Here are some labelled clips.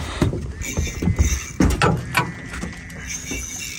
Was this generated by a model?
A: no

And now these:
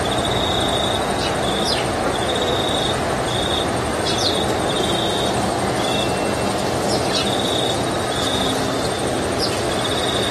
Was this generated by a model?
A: no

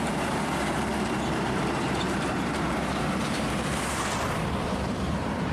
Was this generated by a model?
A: yes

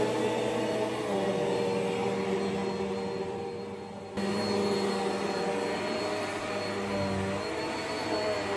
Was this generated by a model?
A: no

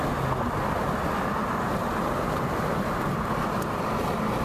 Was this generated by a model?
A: no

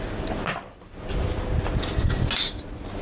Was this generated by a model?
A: no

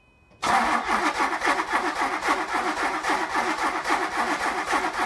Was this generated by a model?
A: no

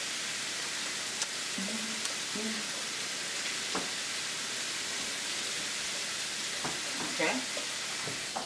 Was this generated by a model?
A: yes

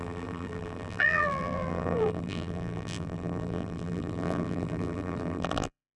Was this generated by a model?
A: yes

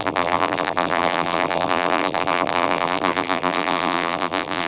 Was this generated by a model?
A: yes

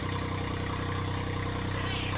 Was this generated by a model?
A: no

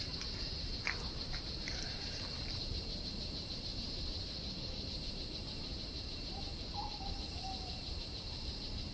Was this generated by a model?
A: yes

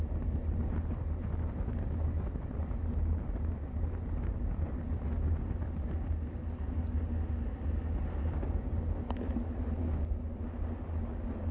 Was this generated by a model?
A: no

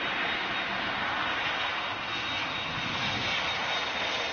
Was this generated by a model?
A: no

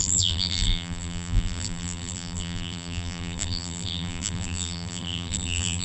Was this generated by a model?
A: yes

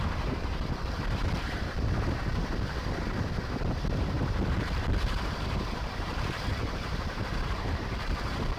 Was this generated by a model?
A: yes